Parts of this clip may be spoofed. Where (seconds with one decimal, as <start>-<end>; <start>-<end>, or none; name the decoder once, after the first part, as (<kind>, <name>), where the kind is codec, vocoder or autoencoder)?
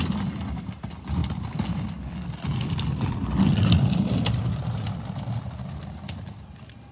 none